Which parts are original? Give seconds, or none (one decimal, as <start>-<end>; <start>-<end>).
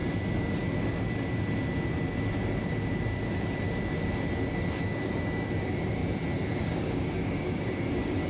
0.0-4.9; 6.0-6.6